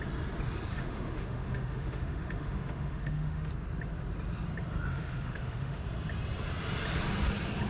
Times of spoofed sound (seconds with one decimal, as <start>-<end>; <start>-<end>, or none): 0.7-3.5; 4.9-5.8